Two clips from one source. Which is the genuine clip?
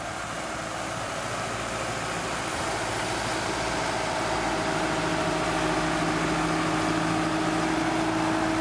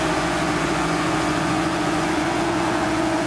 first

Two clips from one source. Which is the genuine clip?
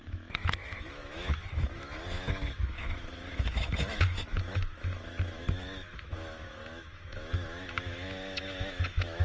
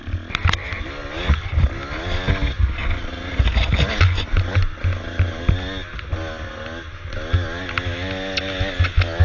second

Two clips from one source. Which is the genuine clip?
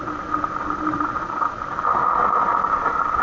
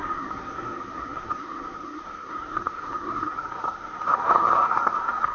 first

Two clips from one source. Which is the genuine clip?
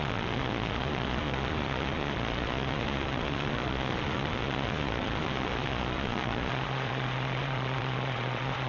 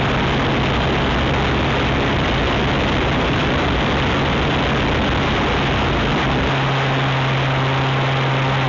second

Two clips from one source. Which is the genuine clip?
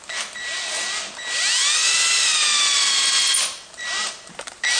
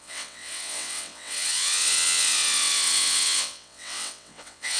first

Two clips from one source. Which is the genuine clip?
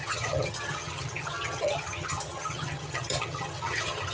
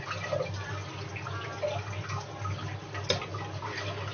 second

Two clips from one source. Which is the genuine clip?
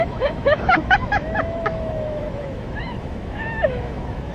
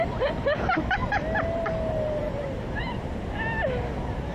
second